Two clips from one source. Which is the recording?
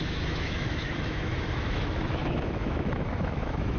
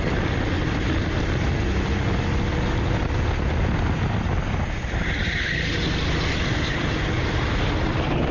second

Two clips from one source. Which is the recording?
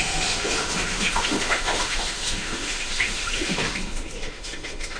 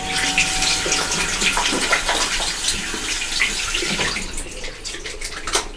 second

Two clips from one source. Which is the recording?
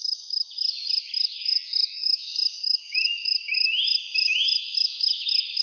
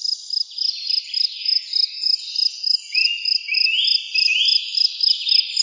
second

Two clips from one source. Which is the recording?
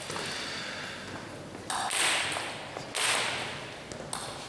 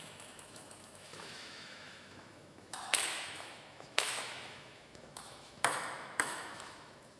first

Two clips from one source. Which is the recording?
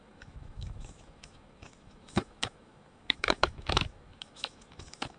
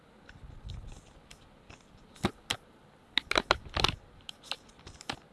second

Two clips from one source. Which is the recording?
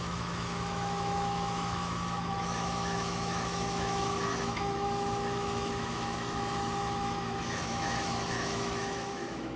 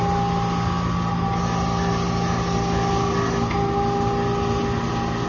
second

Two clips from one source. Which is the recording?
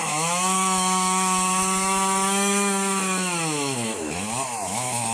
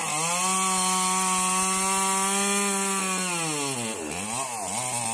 second